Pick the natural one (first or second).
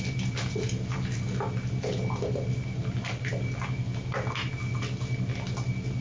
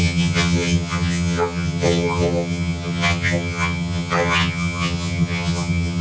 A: first